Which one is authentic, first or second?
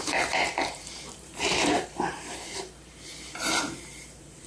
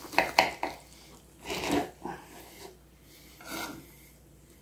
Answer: second